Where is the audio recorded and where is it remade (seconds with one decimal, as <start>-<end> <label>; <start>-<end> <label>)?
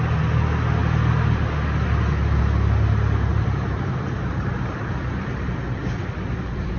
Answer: 0.0-3.3 recorded; 3.3-6.8 remade